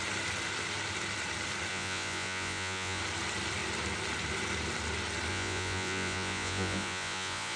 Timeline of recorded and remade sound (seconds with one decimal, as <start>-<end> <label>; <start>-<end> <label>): 0.0-1.7 recorded; 1.7-3.0 remade; 3.0-5.3 recorded; 5.3-7.6 remade